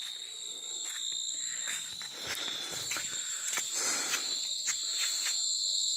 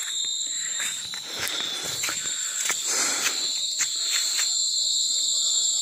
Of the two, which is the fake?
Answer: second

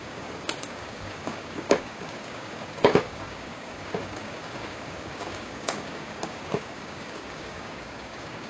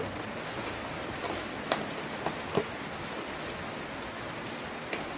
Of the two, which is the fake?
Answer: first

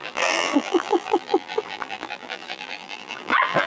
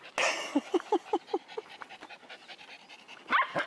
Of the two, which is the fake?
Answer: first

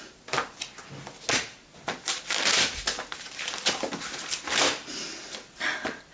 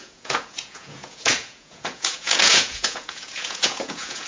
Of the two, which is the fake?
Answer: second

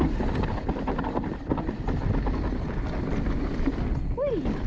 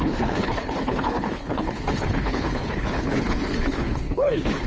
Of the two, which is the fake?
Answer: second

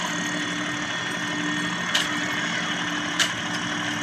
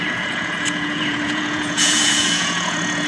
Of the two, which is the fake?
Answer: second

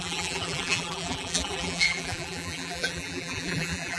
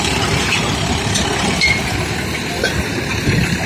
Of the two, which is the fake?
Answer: first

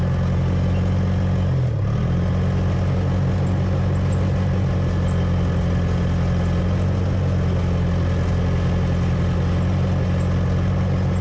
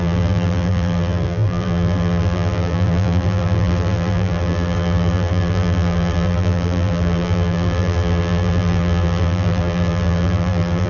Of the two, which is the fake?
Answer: second